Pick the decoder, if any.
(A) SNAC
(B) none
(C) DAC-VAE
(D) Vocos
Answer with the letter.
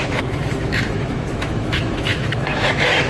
C